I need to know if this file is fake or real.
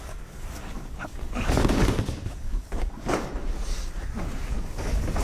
fake